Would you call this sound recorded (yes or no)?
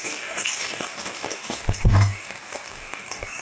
no